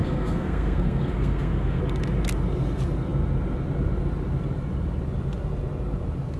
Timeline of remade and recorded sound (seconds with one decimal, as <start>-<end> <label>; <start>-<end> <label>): 0.0-1.8 remade; 1.8-6.4 recorded